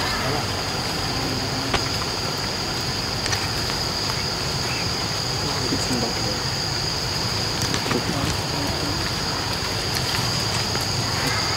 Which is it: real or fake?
fake